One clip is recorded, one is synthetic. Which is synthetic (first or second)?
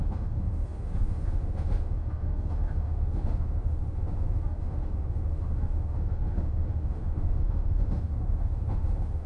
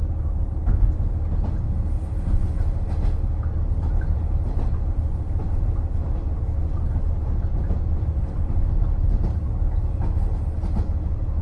first